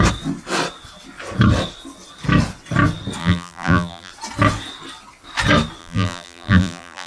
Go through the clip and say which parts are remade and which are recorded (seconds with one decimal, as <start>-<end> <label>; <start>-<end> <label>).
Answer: 0.0-3.2 recorded; 3.2-4.1 remade; 4.1-5.8 recorded; 5.8-7.1 remade